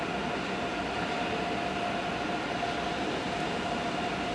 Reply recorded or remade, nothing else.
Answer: recorded